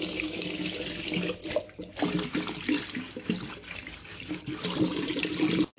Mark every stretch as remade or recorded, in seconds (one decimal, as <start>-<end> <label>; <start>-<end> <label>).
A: 0.0-5.8 recorded